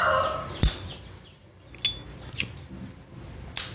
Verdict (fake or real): real